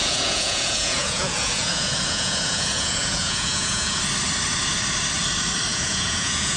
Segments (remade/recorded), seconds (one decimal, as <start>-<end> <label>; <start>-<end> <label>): 0.0-4.0 remade; 4.0-5.7 recorded; 5.7-6.6 remade